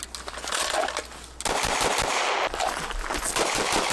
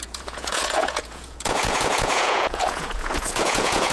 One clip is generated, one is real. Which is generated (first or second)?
second